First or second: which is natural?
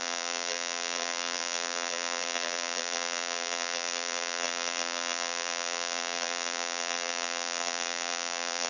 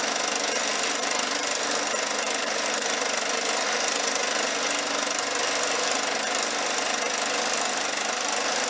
second